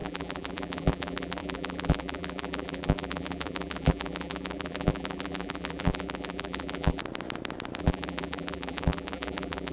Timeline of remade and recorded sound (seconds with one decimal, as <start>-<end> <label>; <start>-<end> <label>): 0.0-7.0 remade; 7.0-7.8 recorded; 7.8-9.7 remade